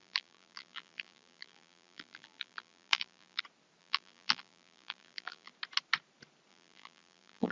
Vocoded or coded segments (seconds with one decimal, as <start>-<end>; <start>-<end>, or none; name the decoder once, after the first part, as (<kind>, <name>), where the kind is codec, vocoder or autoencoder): 0.0-3.4 (vocoder, BigVGAN v2); 3.8-5.5; 6.5-7.5